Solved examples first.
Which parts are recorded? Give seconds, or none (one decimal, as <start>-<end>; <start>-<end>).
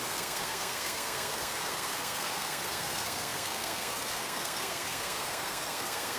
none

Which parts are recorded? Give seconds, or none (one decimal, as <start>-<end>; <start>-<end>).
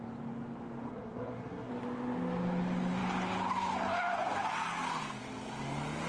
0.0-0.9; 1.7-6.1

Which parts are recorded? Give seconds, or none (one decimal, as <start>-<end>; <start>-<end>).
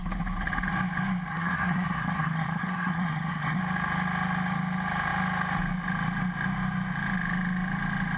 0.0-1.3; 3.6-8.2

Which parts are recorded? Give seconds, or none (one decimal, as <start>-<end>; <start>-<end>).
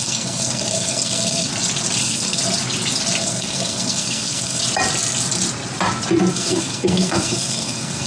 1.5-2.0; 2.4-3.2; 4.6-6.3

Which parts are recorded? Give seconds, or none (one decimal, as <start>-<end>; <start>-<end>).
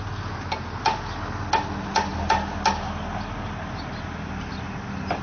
0.0-5.2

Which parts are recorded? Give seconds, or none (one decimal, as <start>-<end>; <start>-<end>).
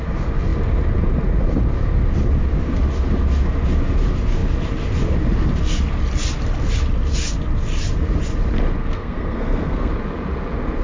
0.0-8.8; 9.9-10.8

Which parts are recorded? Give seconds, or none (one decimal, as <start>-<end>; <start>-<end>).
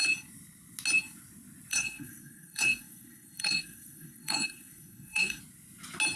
0.0-1.7; 5.4-6.2